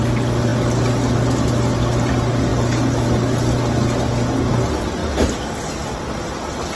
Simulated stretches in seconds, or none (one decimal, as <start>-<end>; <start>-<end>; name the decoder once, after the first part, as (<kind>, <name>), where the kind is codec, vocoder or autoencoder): none